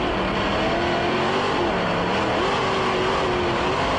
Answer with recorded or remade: recorded